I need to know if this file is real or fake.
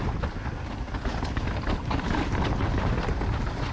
real